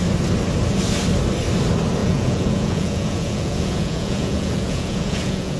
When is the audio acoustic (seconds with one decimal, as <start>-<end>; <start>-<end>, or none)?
0.0-2.0